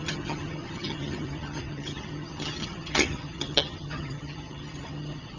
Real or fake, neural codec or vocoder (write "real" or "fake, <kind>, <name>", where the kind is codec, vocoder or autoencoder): fake, vocoder, HiFi-GAN